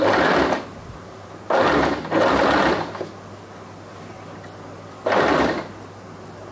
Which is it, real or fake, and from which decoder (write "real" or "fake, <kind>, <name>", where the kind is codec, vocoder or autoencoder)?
real